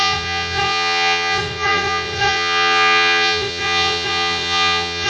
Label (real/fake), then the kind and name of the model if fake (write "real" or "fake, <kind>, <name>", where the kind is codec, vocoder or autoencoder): fake, vocoder, Vocos